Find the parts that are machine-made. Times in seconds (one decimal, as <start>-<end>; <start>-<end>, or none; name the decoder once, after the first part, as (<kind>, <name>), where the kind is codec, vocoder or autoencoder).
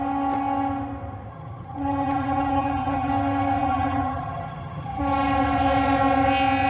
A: 1.3-3.1 (vocoder, HiFi-GAN); 3.6-5.0